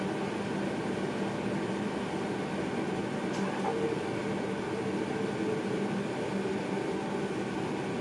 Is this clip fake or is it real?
real